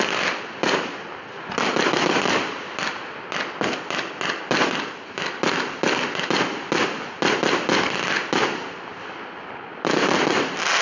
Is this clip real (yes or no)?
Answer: yes